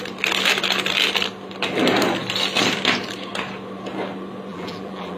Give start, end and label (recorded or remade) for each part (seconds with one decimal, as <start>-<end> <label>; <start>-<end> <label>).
0.0-4.5 recorded; 4.5-5.2 remade